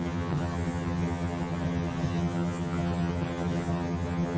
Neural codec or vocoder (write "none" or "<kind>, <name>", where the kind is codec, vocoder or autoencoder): vocoder, HiFi-GAN